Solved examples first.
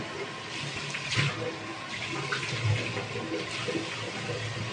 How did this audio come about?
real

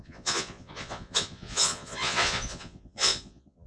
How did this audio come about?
fake